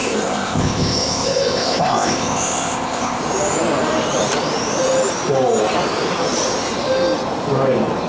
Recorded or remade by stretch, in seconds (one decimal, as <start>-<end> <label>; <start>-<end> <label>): 0.0-3.2 remade; 3.2-8.1 recorded